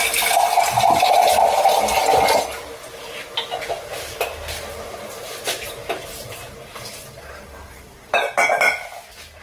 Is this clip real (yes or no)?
yes